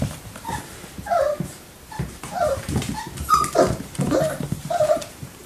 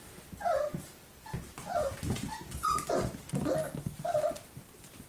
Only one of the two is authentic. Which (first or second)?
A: second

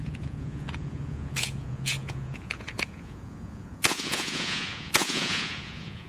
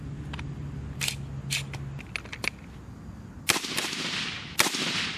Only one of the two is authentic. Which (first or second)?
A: second